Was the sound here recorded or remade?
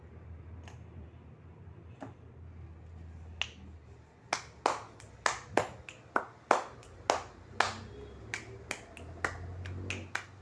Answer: recorded